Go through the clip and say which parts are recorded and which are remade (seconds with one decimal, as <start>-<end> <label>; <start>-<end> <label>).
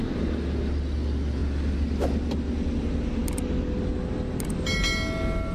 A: 0.0-5.5 recorded